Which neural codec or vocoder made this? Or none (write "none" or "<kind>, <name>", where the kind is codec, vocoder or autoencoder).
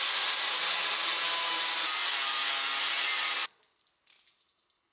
none